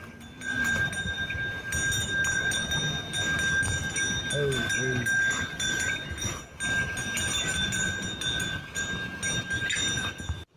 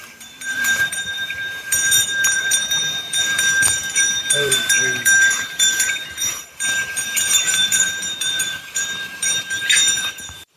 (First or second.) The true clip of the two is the first